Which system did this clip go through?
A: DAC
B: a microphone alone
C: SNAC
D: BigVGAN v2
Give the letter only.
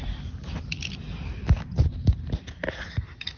B